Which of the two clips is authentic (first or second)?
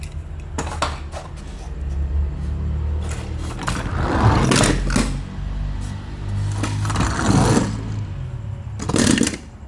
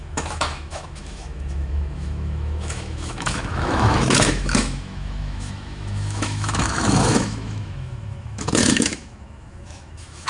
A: first